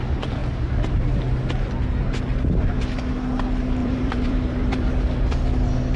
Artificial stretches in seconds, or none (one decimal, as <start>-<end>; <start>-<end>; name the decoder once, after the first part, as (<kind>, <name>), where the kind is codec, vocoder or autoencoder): 3.8-4.9 (vocoder, BigVGAN v2)